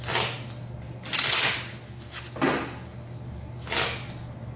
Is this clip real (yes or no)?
yes